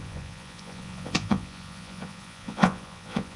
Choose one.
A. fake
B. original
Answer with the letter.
A